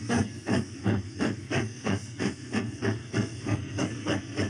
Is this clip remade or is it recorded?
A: remade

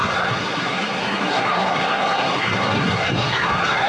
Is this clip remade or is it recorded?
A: remade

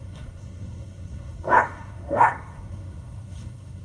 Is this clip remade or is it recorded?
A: remade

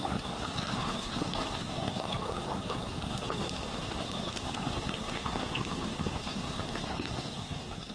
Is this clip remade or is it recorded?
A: remade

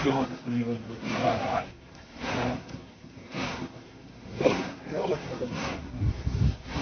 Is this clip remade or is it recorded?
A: remade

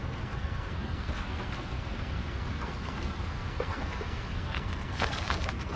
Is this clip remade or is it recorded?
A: remade